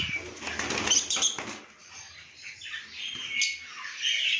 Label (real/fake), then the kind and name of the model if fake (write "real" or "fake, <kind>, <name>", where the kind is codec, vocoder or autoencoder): real